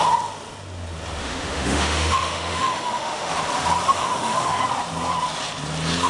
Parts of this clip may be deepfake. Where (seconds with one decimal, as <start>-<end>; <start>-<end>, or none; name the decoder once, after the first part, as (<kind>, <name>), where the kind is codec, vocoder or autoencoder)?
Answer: 1.2-3.3 (autoencoder, DAC-VAE); 3.9-4.6